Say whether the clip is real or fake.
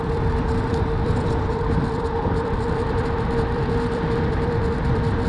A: fake